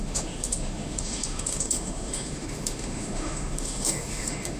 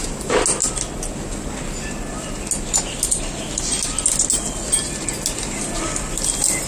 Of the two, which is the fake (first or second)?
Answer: first